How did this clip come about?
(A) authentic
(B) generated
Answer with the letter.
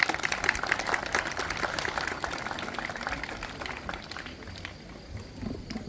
A